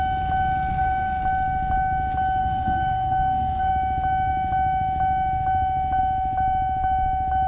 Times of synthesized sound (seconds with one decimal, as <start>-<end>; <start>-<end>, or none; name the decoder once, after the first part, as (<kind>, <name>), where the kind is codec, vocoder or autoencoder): 0.7-1.2 (codec, SNAC); 2.4-3.7